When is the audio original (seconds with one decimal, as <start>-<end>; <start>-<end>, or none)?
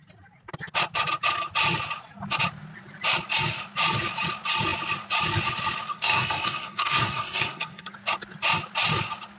0.0-5.9; 7.9-9.4